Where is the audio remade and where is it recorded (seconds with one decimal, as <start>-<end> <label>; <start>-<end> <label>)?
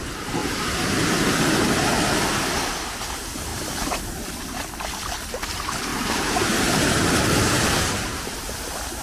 0.0-0.4 recorded; 0.4-1.3 remade; 1.3-3.5 recorded; 3.5-4.7 remade; 4.7-5.9 recorded; 5.9-8.5 remade; 8.5-9.0 recorded